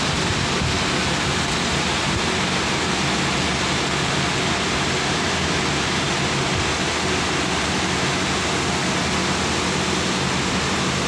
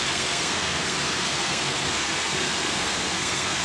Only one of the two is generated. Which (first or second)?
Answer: second